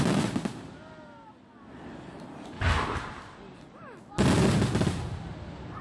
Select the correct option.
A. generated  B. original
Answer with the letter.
B